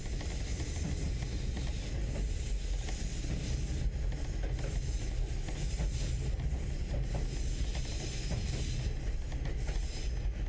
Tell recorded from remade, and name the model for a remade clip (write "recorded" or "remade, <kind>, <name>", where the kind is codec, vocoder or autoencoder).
recorded